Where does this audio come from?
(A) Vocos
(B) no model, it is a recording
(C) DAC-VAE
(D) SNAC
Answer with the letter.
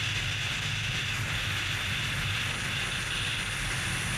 B